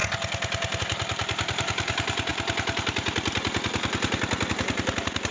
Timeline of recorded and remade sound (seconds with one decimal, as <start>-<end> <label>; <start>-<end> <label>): 0.0-0.8 recorded; 0.8-2.3 remade; 2.3-4.5 recorded; 4.5-5.3 remade